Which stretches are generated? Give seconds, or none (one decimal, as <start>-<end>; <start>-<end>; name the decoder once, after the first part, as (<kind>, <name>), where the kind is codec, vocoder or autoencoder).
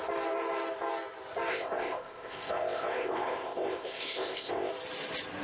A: 1.5-4.7 (codec, ZipCodec)